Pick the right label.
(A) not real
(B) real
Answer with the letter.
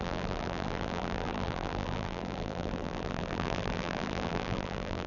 A